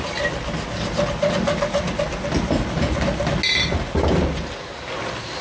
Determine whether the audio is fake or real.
real